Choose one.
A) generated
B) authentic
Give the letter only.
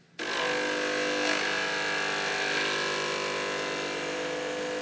B